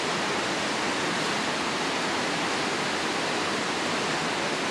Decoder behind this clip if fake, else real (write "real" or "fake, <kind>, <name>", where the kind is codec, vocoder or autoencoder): real